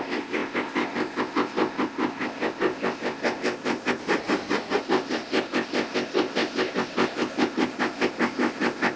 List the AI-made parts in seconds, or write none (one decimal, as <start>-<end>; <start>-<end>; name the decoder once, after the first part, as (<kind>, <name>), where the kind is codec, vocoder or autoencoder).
0.0-4.0 (codec, ZipCodec); 4.8-9.0